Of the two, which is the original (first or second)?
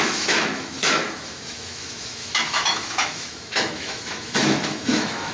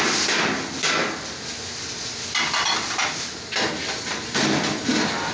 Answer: second